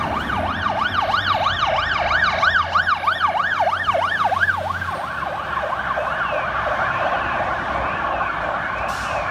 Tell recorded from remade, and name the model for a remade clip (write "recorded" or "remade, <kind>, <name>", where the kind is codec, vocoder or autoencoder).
recorded